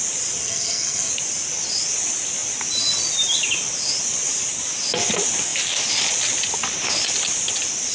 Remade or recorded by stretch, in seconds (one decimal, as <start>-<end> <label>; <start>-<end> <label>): 0.0-0.4 recorded; 0.4-1.1 remade; 1.1-7.9 recorded